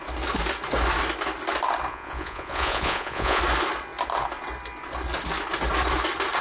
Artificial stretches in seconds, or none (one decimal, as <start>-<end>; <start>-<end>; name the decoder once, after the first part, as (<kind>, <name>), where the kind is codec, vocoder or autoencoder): 1.9-3.4 (vocoder, Vocos)